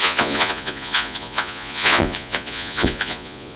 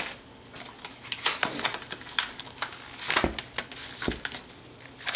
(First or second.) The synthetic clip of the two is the first